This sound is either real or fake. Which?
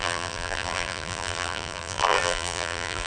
fake